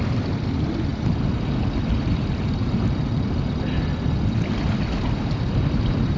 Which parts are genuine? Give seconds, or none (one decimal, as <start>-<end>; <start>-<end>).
0.0-6.2